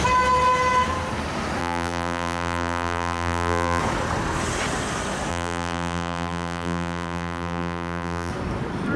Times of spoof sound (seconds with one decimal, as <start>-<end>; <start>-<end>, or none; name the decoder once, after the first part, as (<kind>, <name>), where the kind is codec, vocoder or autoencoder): 1.6-3.8 (vocoder, BigVGAN v2); 5.3-8.3